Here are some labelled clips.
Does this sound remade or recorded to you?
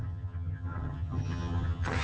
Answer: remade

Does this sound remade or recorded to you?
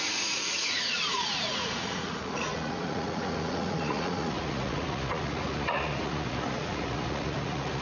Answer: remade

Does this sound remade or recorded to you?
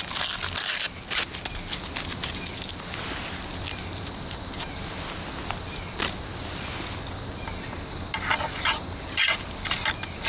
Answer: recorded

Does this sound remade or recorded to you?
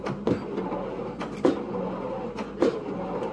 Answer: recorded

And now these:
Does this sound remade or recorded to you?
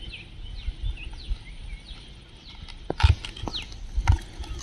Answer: recorded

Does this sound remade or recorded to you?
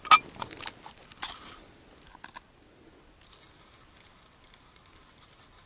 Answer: recorded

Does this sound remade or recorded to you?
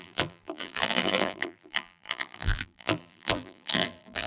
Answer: remade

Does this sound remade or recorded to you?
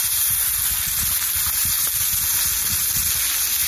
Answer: recorded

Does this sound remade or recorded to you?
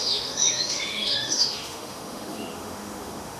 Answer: remade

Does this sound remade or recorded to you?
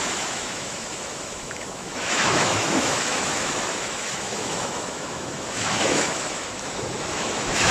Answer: remade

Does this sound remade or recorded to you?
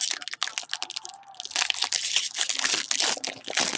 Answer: recorded